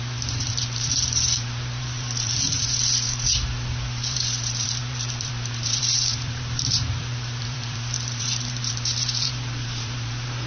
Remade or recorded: remade